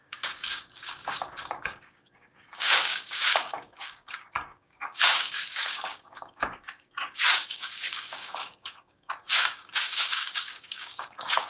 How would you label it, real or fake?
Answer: fake